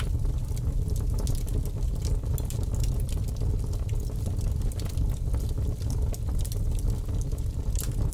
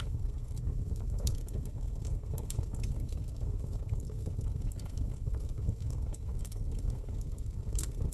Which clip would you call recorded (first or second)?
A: first